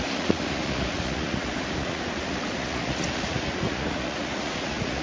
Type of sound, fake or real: fake